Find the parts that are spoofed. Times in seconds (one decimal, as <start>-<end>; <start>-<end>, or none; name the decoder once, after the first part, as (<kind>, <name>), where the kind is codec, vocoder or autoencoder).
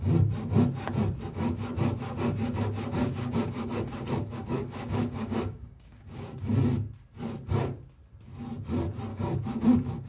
3.0-6.4 (codec, DAC); 9.1-10.1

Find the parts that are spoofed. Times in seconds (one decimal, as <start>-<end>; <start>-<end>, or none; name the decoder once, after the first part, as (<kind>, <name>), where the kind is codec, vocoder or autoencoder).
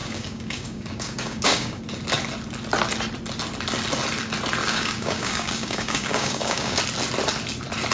0.0-1.8 (codec, DAC); 4.6-6.8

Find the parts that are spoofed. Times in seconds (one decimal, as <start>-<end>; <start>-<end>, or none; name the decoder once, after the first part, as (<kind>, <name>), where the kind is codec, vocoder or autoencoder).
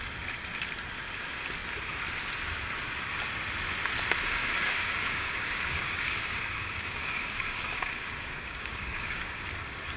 4.4-9.4 (codec, DAC)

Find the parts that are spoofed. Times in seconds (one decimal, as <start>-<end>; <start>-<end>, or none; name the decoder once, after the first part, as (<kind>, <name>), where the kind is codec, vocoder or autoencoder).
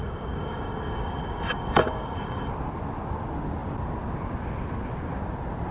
0.0-2.5 (codec, DAC)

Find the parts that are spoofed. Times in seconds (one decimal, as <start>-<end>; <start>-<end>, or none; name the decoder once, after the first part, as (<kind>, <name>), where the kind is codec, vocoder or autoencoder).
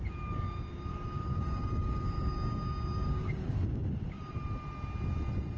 0.9-4.3 (codec, DAC)